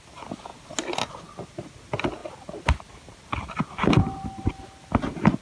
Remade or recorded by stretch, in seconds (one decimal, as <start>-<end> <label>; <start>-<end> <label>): 0.0-5.4 recorded